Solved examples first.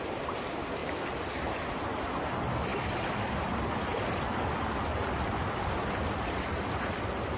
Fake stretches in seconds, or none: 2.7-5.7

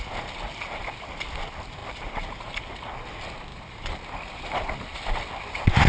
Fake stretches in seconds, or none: 1.8-2.6; 3.5-4.0

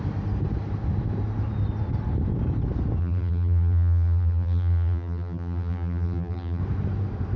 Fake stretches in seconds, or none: 3.0-6.6

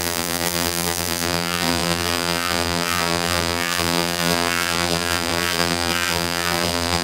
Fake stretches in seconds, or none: 0.0-7.0

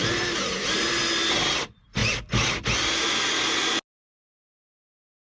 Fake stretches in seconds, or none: 0.0-1.0; 1.6-2.0; 4.9-5.4

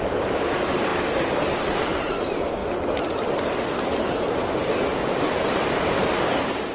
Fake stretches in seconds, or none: 0.0-0.9; 1.8-2.6; 4.1-6.7

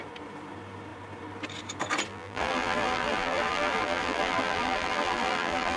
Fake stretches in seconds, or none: 2.1-5.8

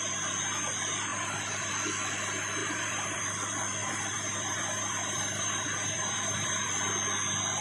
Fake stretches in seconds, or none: 1.1-1.7; 2.6-3.2; 3.8-6.7